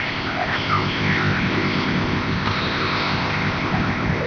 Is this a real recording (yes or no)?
no